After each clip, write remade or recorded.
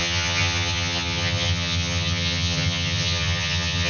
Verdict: remade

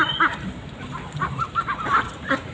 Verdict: recorded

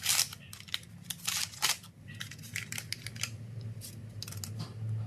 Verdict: recorded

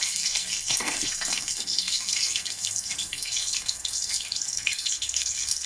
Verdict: remade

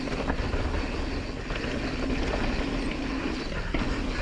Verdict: recorded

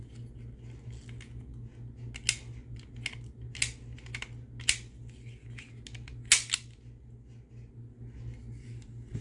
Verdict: recorded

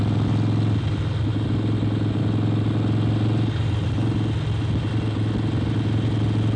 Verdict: recorded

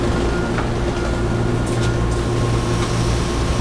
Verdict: recorded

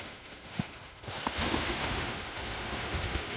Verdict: remade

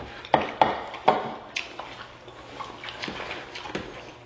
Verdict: recorded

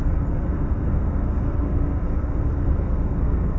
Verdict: remade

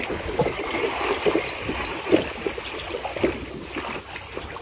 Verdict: recorded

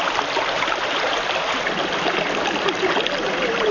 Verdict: recorded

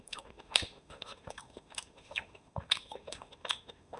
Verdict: remade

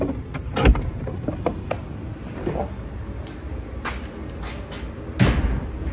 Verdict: recorded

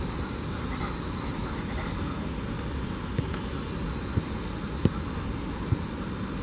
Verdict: recorded